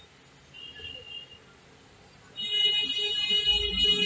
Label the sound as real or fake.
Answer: real